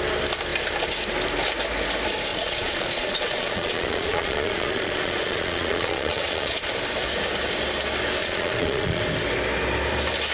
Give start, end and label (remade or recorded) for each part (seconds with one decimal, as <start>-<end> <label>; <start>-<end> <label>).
0.0-2.3 recorded; 2.3-6.7 remade; 6.7-8.2 recorded; 8.2-9.0 remade; 9.0-10.3 recorded